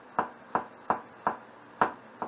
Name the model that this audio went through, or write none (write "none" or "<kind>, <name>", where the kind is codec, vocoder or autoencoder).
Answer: none